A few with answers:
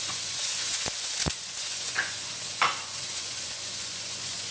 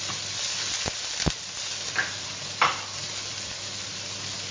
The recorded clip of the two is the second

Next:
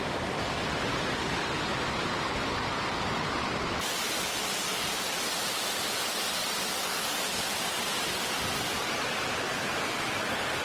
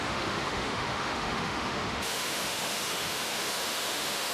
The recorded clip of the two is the first